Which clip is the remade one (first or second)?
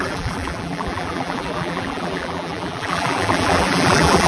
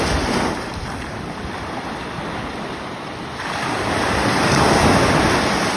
first